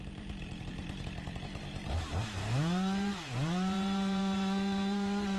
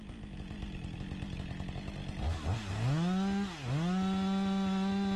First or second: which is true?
second